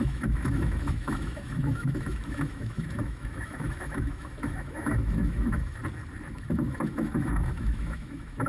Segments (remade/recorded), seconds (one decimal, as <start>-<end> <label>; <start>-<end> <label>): 0.0-5.8 remade; 5.8-6.3 recorded; 6.3-8.5 remade